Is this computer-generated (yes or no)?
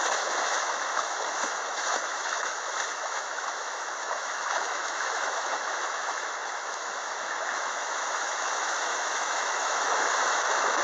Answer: yes